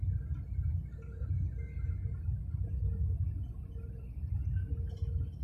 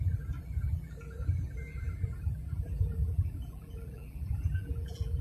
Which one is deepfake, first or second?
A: second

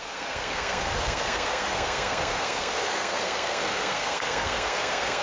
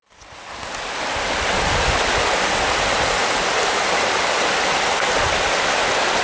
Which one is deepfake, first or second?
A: first